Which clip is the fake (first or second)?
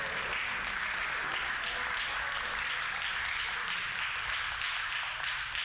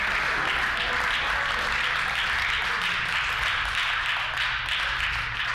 first